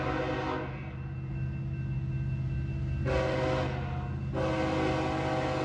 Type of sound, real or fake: real